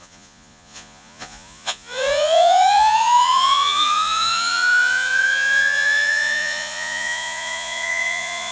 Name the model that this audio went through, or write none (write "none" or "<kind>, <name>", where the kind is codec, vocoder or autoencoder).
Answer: vocoder, Vocos